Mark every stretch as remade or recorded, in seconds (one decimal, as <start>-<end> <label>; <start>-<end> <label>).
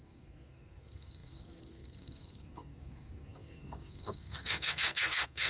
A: 0.0-5.5 remade